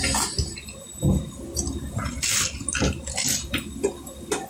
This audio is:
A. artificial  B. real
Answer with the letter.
B